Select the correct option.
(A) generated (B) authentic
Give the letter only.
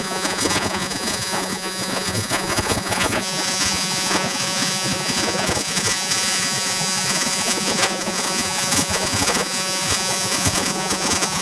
A